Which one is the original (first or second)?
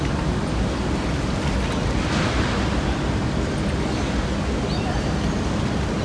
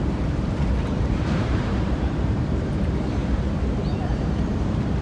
first